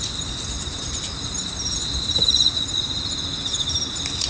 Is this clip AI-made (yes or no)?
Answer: no